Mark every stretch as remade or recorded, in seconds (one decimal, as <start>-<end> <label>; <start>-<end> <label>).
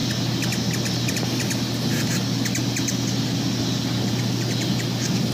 0.0-5.3 recorded